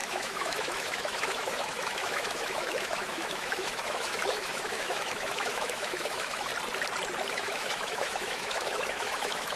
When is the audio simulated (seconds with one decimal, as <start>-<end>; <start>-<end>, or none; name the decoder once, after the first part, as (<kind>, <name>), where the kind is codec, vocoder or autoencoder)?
0.0-6.5 (autoencoder, DAC-VAE); 7.3-9.6